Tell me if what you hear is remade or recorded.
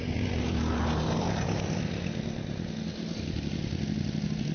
recorded